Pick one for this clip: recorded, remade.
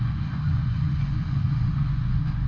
remade